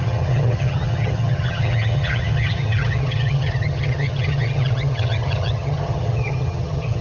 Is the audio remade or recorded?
remade